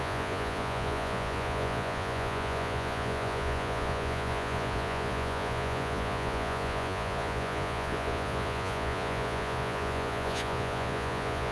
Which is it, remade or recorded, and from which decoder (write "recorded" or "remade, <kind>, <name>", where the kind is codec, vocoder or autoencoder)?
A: remade, vocoder, Vocos